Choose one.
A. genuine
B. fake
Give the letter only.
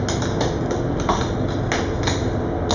A